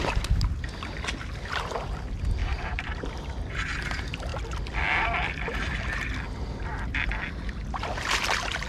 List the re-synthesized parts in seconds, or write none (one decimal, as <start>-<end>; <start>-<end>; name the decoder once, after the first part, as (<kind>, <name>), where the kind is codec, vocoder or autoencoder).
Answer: 2.4-3.1 (vocoder, BigVGAN v2)